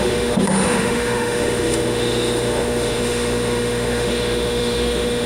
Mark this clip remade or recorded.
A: remade